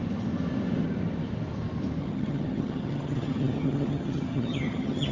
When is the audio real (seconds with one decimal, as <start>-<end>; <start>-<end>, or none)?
0.0-2.0